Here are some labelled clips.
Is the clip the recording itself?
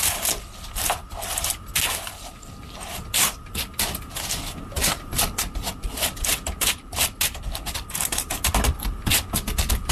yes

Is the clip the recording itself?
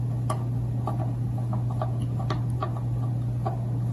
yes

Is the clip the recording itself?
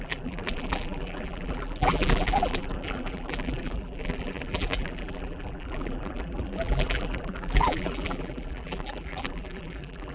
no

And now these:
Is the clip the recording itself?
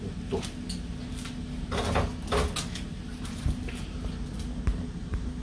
yes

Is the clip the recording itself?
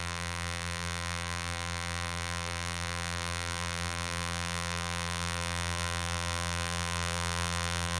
no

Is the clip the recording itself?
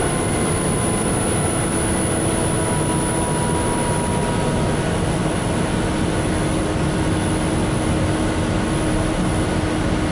yes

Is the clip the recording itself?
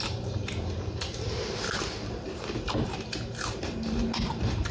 no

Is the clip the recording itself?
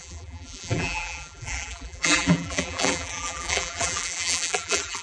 no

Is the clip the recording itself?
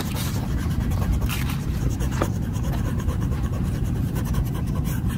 no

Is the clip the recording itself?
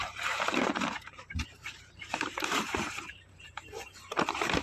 no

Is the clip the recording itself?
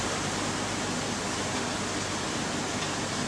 yes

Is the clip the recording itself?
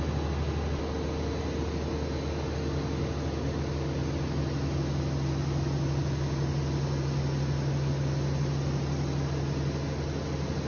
yes